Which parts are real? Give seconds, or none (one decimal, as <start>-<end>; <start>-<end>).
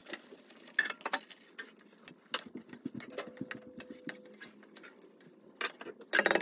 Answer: 0.0-6.4